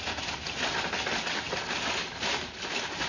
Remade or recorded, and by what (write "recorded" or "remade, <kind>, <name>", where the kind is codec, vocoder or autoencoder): recorded